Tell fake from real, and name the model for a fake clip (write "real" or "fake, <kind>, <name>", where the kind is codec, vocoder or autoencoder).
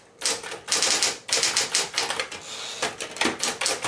real